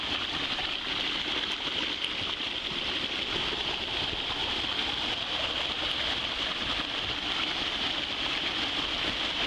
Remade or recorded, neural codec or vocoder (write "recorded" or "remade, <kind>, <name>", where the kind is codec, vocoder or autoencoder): recorded